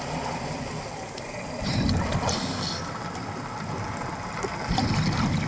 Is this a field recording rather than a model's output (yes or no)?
yes